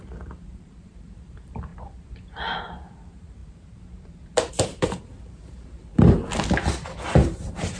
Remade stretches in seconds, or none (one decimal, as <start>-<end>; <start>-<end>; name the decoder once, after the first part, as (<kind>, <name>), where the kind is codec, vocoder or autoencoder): 0.0-1.7 (vocoder, BigVGAN v2); 2.6-6.2; 7.1-7.8